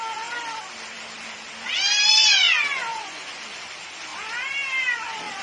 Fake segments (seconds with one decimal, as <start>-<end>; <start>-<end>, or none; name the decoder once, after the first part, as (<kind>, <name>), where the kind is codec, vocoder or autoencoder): 2.9-3.4 (vocoder, Vocos)